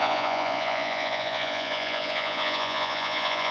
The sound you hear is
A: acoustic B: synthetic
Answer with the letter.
B